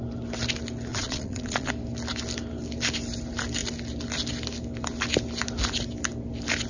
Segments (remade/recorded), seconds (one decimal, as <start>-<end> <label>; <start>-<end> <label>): 0.0-0.9 recorded; 0.9-1.7 remade; 1.7-6.7 recorded